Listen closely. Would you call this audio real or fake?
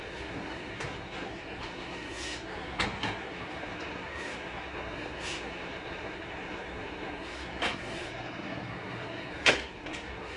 fake